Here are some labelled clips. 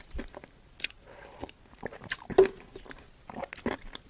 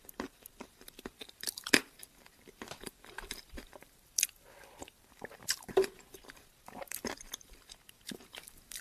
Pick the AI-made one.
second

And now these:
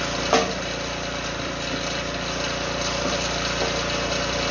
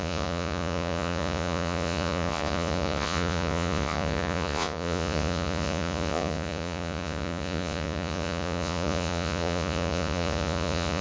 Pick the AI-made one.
second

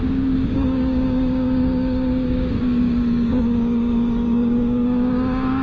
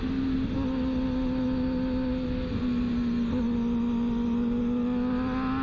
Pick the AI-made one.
first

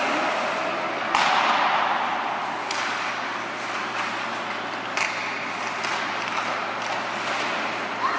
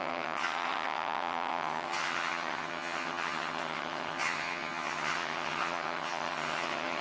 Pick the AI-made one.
second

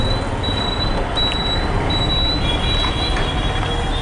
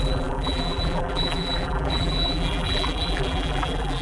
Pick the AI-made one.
second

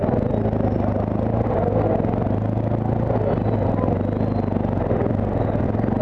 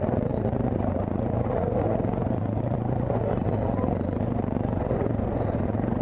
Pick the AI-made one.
second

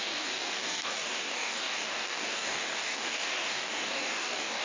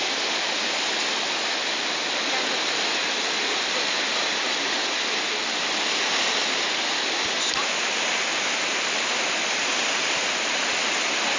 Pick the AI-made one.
first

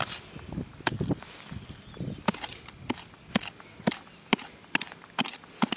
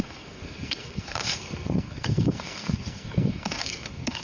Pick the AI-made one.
second